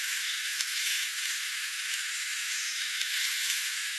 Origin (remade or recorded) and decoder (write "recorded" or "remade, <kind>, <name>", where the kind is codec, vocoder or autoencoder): remade, autoencoder, DAC-VAE